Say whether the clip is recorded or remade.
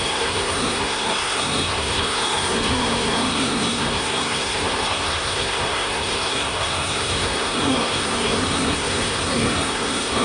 remade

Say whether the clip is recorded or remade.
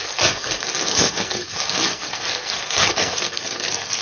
remade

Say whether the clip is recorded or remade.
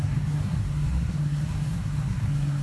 remade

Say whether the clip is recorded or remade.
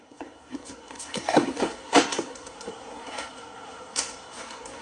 remade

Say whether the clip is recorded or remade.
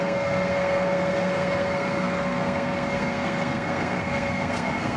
remade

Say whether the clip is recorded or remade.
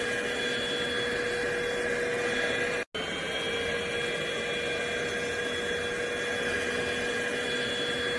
recorded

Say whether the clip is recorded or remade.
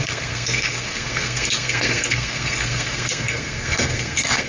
remade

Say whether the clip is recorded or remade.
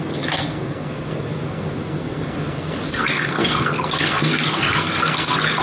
remade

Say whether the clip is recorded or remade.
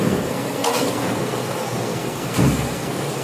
remade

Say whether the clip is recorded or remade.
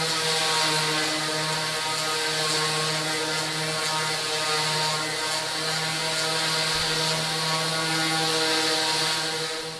recorded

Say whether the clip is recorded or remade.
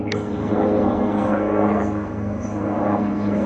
remade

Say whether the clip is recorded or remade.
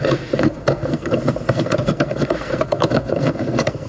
remade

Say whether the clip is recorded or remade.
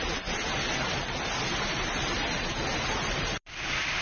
recorded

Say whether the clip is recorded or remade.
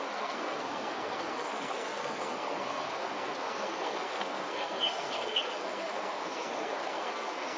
remade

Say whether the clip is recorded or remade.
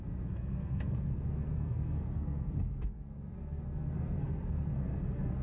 remade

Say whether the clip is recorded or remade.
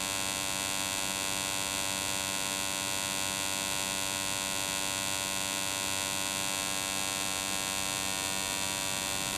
recorded